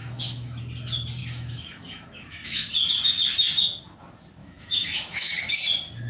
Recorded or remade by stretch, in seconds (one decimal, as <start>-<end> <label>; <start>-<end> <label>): 0.0-0.6 remade; 0.6-1.2 recorded; 1.2-2.7 remade; 2.7-4.4 recorded; 4.4-5.3 remade; 5.3-6.1 recorded